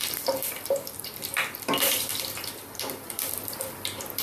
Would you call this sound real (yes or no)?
no